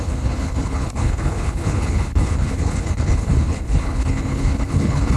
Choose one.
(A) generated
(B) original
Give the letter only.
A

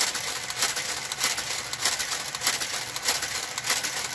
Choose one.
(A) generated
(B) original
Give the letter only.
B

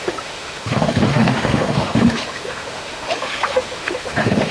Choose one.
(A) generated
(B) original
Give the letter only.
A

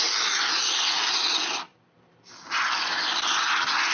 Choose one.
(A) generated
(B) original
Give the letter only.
B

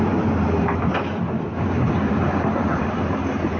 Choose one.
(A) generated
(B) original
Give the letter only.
A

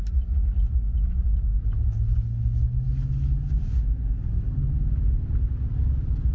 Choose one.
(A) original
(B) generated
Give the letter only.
A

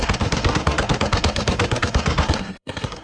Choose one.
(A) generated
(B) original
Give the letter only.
A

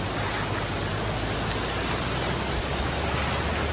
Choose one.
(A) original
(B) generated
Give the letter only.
A